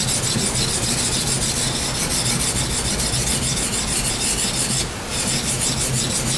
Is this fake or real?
real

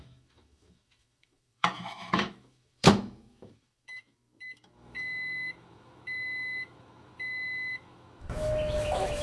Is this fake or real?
fake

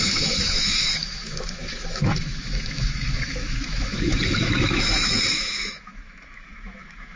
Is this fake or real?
fake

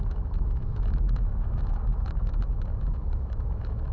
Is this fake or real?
fake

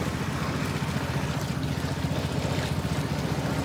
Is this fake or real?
real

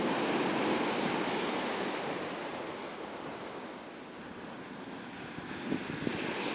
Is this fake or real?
real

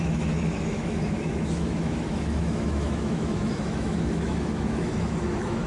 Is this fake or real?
fake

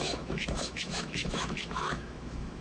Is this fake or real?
fake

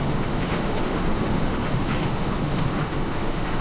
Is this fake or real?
fake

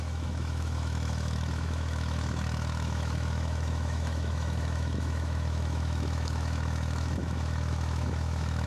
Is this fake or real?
fake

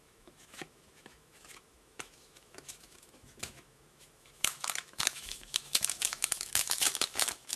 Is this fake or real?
fake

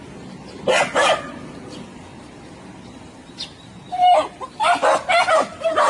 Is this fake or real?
real